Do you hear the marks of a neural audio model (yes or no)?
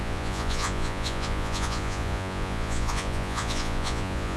yes